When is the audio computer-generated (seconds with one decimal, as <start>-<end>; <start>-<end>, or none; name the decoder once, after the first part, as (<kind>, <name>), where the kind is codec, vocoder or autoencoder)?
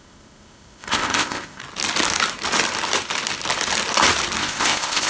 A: 0.0-1.6 (codec, ZipCodec); 4.4-5.1